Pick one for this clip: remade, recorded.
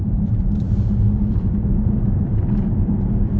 remade